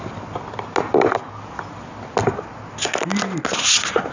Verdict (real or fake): real